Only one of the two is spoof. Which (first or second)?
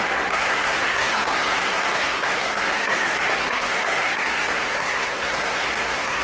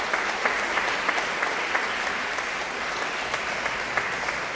first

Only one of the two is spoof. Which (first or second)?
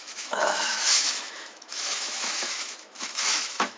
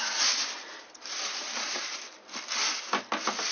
first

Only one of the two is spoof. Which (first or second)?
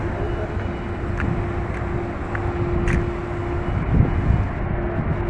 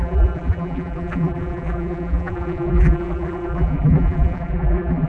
second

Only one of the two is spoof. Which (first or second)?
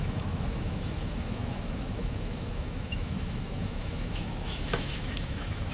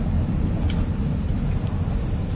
first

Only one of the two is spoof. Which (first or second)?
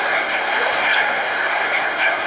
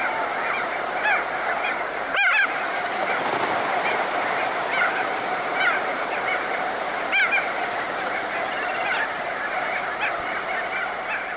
first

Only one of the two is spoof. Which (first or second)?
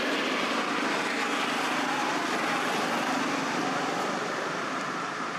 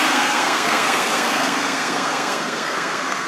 second